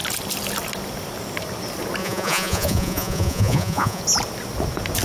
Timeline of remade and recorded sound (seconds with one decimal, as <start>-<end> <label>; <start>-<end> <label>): 0.0-2.0 recorded; 2.0-4.0 remade; 4.0-5.0 recorded